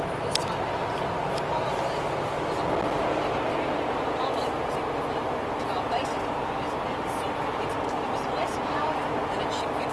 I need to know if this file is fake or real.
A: real